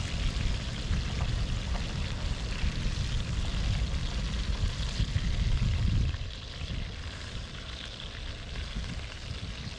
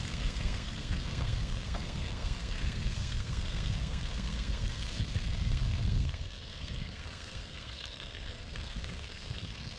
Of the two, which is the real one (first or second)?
first